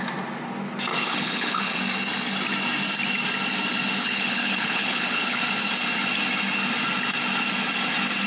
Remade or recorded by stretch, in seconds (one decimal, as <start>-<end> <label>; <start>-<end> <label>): 0.0-0.9 recorded; 0.9-1.8 remade; 1.8-4.0 recorded; 4.0-5.4 remade; 5.4-8.3 recorded